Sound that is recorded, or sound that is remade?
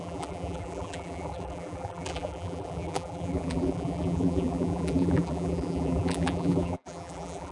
remade